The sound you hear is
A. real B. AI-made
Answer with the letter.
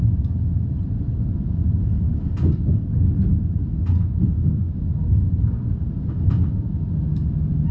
A